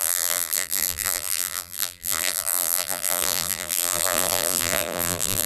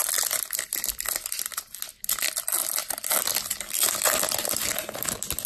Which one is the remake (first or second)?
first